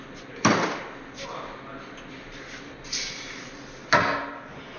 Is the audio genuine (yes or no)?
yes